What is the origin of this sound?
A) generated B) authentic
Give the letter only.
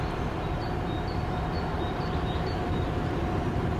A